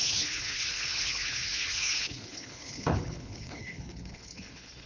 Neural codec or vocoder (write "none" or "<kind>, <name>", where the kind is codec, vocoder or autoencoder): codec, HILCodec